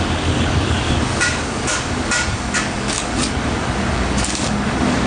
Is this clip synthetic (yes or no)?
yes